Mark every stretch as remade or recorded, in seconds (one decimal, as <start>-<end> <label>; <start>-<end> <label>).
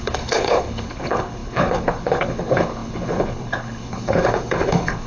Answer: 0.0-5.1 remade